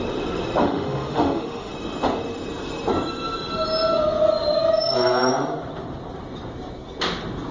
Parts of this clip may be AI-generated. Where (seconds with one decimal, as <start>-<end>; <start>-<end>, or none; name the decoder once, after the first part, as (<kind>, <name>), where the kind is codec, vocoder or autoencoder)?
0.6-1.7 (autoencoder, DAC-VAE)